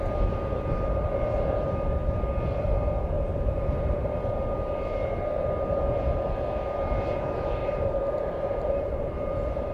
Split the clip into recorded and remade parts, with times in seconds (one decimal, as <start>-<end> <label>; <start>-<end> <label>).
0.0-3.3 recorded; 3.3-4.1 remade; 4.1-7.6 recorded; 7.6-9.7 remade